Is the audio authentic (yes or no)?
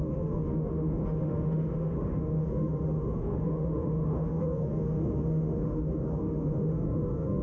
no